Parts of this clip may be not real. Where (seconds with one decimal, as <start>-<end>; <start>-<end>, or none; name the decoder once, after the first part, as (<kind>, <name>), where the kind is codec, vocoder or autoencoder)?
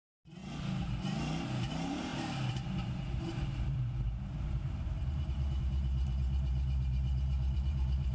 0.0-0.4 (vocoder, BigVGAN v2); 1.6-8.1